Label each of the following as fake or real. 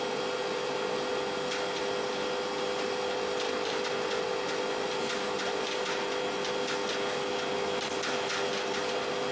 real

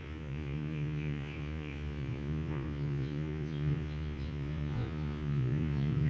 fake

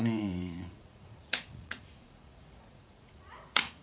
fake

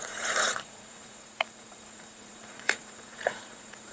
fake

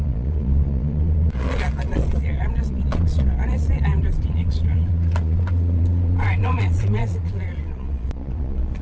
fake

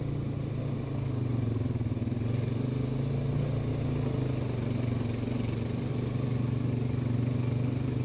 real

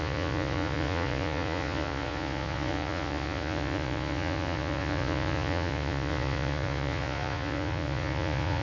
fake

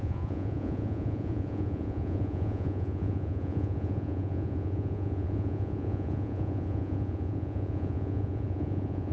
fake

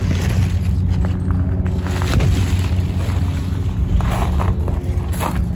real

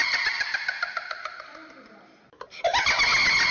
real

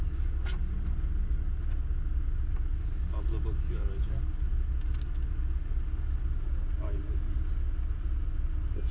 real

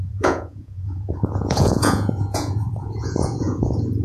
fake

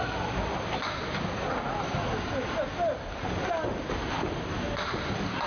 real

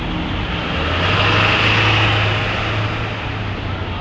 real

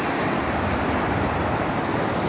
real